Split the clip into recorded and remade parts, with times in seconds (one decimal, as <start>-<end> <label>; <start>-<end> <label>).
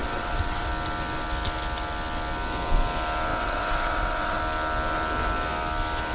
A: 0.0-0.7 remade; 0.7-3.3 recorded; 3.3-4.4 remade; 4.4-6.1 recorded